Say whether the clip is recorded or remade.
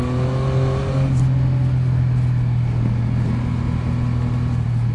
recorded